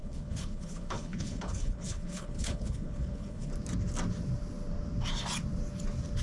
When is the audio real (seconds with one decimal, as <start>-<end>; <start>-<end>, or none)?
3.5-6.2